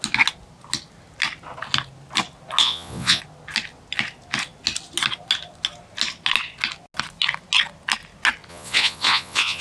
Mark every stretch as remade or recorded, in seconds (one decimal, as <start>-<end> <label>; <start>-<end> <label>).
0.0-2.6 recorded; 2.6-3.2 remade; 3.2-8.5 recorded; 8.5-9.6 remade